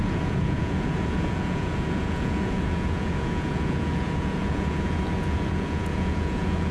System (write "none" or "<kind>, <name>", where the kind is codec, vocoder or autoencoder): vocoder, Vocos